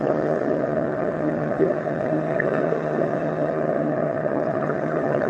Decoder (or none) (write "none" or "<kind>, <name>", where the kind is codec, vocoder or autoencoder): vocoder, Vocos